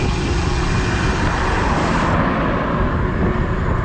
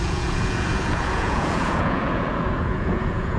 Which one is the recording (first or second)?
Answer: first